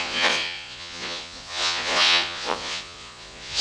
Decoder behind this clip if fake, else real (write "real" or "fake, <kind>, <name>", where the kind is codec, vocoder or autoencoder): fake, vocoder, Vocos